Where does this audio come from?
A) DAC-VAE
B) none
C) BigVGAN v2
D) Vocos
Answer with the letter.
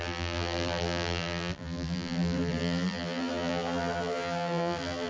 C